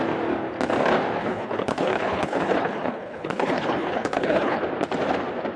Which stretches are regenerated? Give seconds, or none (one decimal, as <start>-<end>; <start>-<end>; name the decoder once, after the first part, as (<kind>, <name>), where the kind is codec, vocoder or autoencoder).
1.2-4.6 (codec, HILCodec)